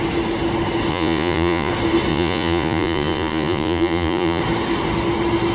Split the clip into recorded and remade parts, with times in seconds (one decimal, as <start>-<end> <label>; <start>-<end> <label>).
0.0-0.9 recorded; 0.9-1.7 remade; 1.7-2.1 recorded; 2.1-4.4 remade; 4.4-5.5 recorded